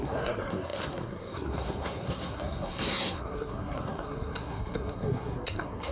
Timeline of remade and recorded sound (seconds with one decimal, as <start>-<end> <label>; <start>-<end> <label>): 0.0-5.9 remade